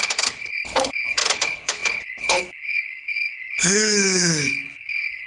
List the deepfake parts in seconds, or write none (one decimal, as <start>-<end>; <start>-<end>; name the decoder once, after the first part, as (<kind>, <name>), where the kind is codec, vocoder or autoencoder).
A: 0.0-5.3 (codec, HILCodec)